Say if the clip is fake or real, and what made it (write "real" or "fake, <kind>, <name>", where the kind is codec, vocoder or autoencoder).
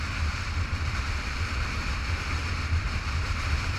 fake, vocoder, BigVGAN v2